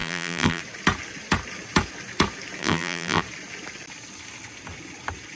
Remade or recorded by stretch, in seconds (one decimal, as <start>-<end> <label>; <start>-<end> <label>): 0.0-0.6 remade; 0.6-2.6 recorded; 2.6-3.2 remade; 3.2-5.4 recorded